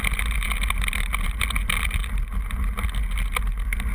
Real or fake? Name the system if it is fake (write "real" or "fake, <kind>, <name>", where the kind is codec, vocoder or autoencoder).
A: real